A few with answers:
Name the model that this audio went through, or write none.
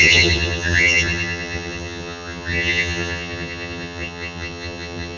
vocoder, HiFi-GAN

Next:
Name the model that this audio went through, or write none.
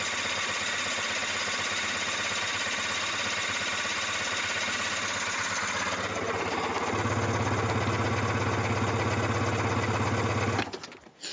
none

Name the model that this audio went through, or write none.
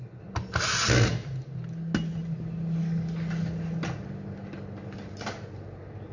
none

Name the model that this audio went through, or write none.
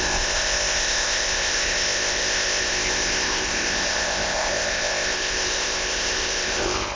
codec, ZipCodec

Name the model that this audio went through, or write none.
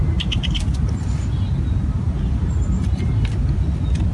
none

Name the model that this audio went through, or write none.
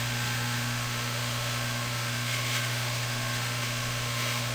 autoencoder, DAC-VAE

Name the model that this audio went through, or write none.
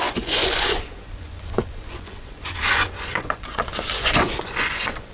vocoder, Vocos